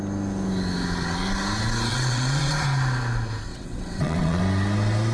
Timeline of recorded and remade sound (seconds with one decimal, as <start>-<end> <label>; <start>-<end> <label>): 0.0-1.9 recorded; 1.9-2.5 remade; 2.5-3.5 recorded; 3.5-4.4 remade; 4.4-5.1 recorded